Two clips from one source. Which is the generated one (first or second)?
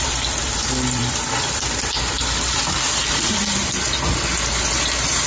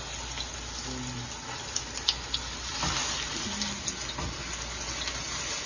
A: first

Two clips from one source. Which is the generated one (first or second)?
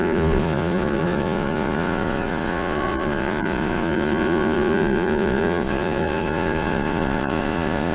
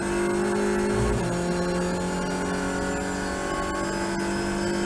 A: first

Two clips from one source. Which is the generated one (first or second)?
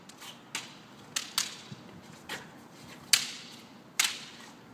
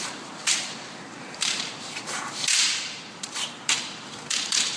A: second